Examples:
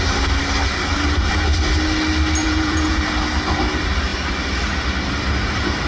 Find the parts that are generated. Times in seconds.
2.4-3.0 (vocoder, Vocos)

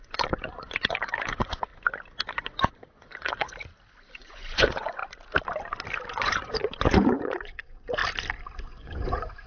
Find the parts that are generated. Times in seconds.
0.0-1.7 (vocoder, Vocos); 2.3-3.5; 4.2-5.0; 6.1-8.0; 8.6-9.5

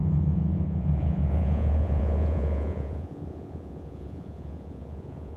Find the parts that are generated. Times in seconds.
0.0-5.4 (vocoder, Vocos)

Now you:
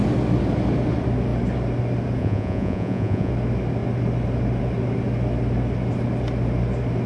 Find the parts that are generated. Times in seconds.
2.2-3.3 (vocoder, Vocos)

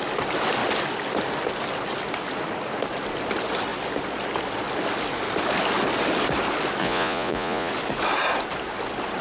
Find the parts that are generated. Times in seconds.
6.8-7.7 (vocoder, Vocos)

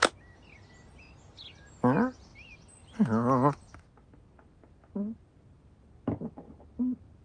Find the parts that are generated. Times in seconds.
none

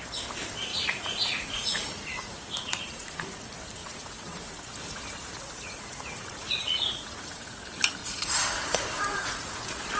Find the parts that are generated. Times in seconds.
0.7-3.4 (vocoder, Vocos); 3.8-7.6; 8.0-9.6

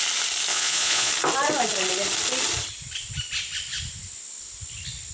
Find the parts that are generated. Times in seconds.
0.5-1.1 (vocoder, Vocos)